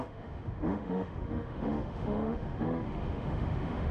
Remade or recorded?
remade